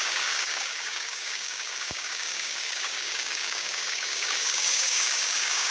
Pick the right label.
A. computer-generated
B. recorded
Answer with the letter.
A